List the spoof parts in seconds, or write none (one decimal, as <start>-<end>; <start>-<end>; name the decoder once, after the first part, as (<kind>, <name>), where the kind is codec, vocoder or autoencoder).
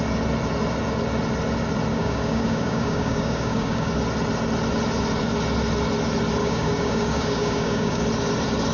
1.9-3.9 (codec, DAC); 6.4-8.0